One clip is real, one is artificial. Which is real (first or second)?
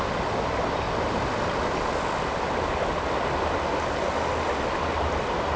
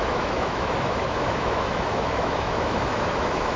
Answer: first